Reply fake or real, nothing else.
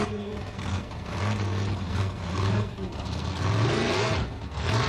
fake